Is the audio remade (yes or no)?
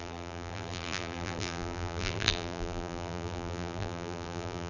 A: yes